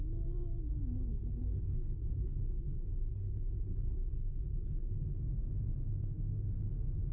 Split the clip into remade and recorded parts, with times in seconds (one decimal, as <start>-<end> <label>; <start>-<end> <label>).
0.0-1.1 recorded; 1.1-5.2 remade; 5.2-7.1 recorded